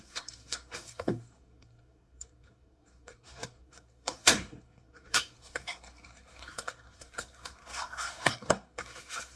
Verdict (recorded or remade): remade